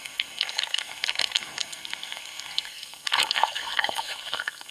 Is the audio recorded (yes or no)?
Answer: no